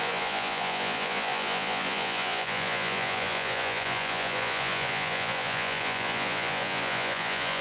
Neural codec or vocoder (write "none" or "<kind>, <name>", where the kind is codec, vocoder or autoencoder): vocoder, Vocos